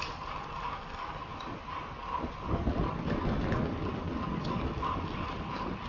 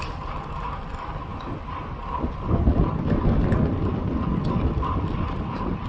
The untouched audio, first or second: first